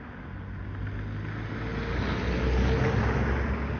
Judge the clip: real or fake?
real